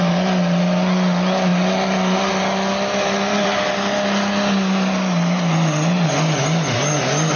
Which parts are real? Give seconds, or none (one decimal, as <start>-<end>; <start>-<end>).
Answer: 0.0-7.4